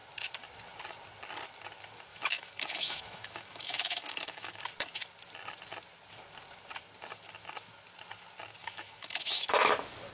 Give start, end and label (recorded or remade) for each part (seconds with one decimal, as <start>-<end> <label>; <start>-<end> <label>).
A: 0.0-2.1 recorded; 2.1-4.6 remade; 4.6-8.6 recorded; 8.6-9.7 remade; 9.7-10.1 recorded